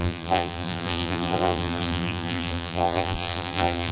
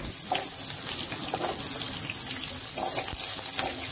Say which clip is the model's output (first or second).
first